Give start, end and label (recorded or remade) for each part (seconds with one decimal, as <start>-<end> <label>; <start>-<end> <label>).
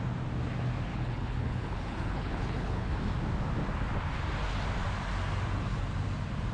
0.0-0.9 recorded; 0.9-2.9 remade; 2.9-6.5 recorded